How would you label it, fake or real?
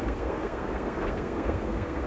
fake